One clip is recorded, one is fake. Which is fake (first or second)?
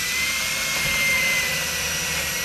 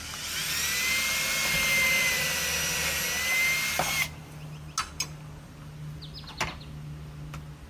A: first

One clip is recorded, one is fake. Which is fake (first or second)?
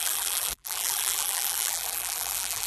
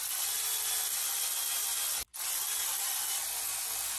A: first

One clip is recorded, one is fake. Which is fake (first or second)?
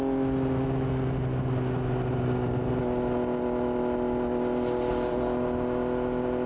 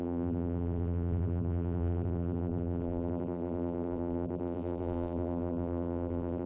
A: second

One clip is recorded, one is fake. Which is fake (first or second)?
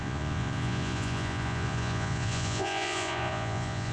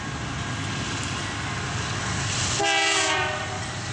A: first